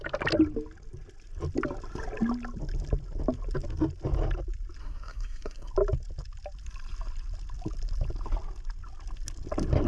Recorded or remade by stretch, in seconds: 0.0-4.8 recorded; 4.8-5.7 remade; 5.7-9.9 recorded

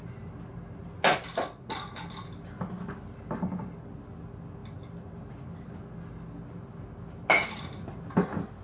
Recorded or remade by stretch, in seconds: 0.0-8.6 recorded

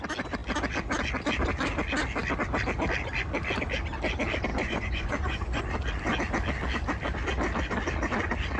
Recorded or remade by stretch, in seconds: 0.0-4.5 recorded; 4.5-5.6 remade; 5.6-8.6 recorded

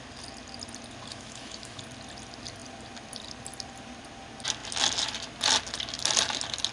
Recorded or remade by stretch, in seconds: 0.0-1.1 recorded; 1.1-1.8 remade; 1.8-6.7 recorded

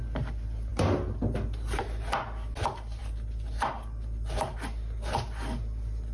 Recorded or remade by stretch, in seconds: 0.0-6.1 recorded